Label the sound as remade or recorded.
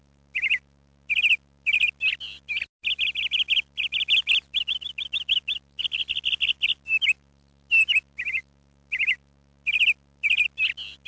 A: recorded